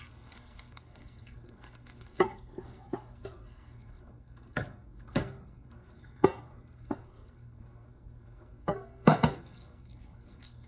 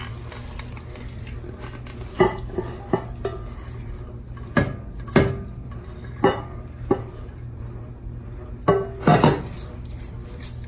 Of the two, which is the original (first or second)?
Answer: second